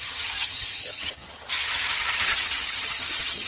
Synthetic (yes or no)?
yes